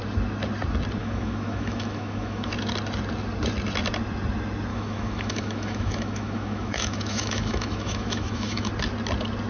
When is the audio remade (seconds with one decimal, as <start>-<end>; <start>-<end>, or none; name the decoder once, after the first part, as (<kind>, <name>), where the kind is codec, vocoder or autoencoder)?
1.0-2.5 (autoencoder, DAC-VAE); 4.7-8.7